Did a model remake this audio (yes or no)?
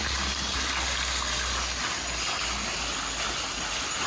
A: no